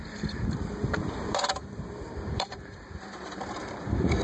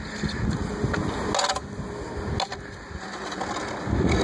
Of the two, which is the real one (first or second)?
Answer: second